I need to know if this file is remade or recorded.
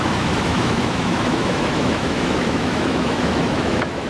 remade